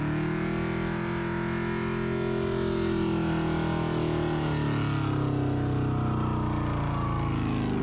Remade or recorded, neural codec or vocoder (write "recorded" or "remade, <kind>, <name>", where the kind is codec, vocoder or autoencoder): recorded